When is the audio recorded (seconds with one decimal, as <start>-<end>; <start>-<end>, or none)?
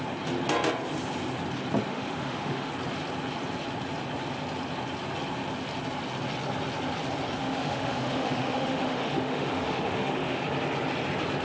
0.0-1.9; 2.7-7.4; 10.4-11.4